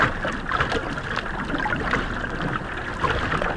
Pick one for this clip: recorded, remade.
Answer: recorded